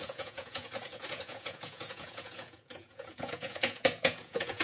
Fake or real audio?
fake